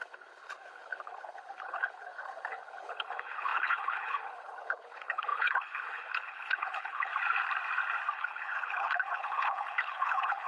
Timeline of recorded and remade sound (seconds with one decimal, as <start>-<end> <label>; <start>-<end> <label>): 0.0-7.1 remade; 7.1-8.1 recorded; 8.1-10.5 remade